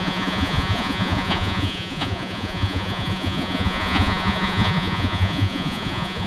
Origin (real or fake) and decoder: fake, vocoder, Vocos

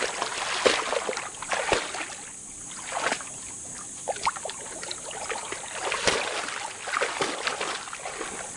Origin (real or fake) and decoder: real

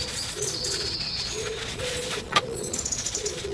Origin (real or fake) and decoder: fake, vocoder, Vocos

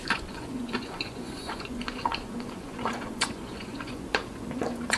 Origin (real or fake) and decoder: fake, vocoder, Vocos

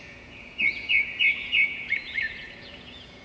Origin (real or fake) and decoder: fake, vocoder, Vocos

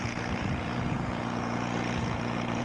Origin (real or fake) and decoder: fake, vocoder, Vocos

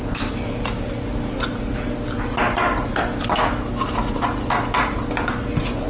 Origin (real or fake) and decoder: real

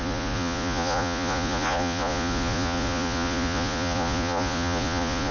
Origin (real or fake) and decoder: fake, vocoder, Vocos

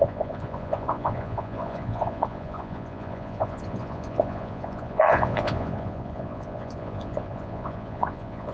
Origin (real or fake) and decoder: fake, vocoder, Vocos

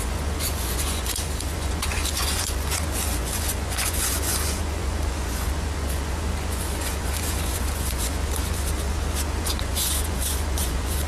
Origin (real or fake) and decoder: fake, vocoder, Vocos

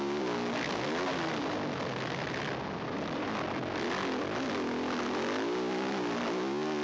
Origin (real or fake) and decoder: real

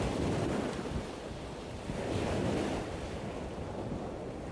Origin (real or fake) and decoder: real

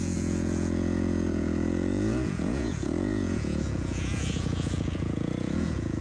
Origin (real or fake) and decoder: fake, vocoder, Vocos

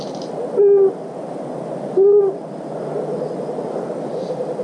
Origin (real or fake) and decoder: real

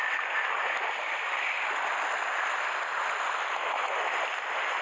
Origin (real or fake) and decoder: real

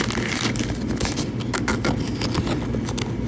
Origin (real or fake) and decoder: real